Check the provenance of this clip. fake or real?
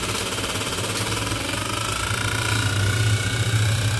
real